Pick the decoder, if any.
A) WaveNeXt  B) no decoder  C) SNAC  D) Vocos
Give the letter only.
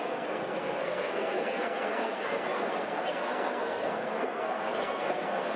C